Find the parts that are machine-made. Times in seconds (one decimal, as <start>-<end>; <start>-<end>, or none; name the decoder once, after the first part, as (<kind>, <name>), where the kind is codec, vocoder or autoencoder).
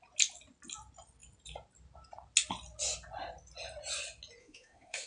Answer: 4.4-5.1 (autoencoder, DAC-VAE)